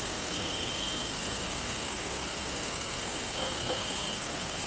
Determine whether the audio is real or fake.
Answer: fake